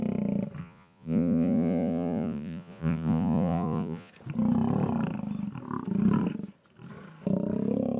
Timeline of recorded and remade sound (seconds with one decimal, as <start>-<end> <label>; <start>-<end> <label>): 0.0-0.6 recorded; 0.6-4.1 remade; 4.1-8.0 recorded